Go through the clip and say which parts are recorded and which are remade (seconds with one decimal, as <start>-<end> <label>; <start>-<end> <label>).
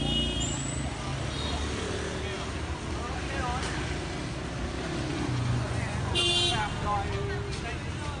0.0-5.1 recorded; 5.1-6.2 remade; 6.2-8.2 recorded